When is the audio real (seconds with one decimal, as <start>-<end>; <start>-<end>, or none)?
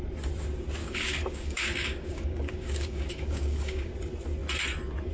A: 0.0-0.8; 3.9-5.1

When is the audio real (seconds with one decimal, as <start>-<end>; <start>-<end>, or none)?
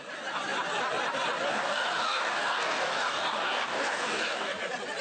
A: 0.0-1.5; 4.5-5.0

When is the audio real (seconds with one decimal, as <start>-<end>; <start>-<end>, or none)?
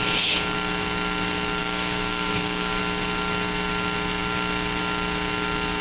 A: 0.0-1.6; 2.8-5.8